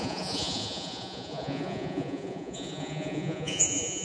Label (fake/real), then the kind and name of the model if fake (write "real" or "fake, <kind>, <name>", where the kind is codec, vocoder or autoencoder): fake, vocoder, Vocos